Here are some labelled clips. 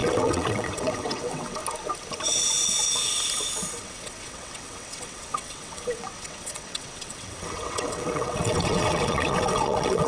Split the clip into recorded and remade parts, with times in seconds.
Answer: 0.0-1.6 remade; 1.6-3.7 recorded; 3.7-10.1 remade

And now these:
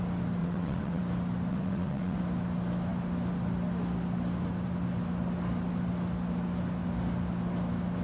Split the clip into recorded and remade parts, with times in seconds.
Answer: 0.0-0.4 recorded; 0.4-1.0 remade; 1.0-1.5 recorded; 1.5-2.2 remade; 2.2-8.0 recorded

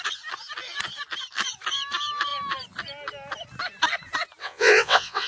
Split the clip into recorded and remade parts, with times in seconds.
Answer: 0.0-4.4 recorded; 4.4-5.3 remade